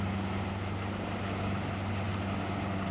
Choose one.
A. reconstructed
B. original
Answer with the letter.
B